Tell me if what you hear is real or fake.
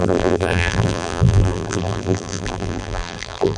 fake